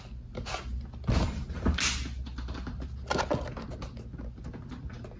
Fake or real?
real